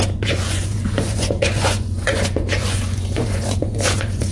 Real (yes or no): no